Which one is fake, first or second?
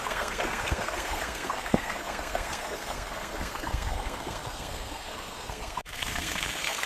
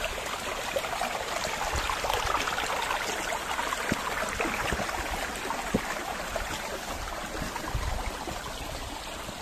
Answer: first